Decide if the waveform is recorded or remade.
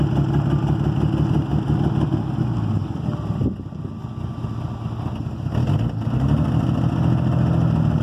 recorded